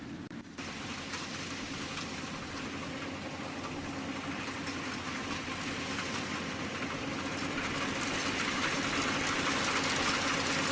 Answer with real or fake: real